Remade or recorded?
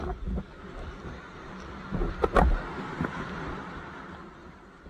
recorded